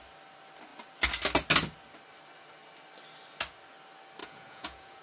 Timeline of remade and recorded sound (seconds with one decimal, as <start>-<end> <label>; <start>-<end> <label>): 0.0-4.2 recorded; 4.2-5.0 remade